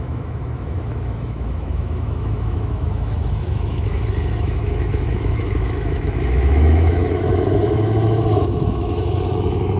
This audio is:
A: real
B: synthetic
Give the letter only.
B